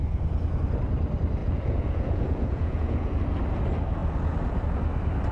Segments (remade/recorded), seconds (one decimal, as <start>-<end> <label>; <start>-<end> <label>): 0.0-1.4 recorded; 1.4-3.2 remade; 3.2-5.3 recorded